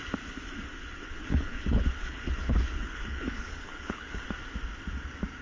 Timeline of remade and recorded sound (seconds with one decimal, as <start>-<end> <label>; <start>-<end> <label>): 0.0-1.0 recorded; 1.0-4.2 remade; 4.2-5.4 recorded